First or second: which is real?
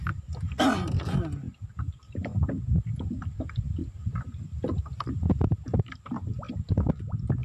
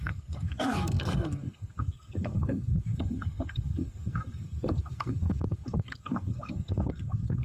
first